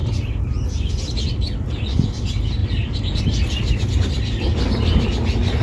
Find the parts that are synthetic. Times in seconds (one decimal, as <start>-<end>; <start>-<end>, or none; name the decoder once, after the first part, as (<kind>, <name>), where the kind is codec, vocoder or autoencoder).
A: none